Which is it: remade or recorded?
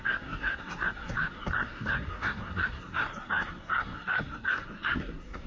remade